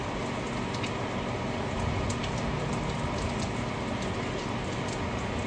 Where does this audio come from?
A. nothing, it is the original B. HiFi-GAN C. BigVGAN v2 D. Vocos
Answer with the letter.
A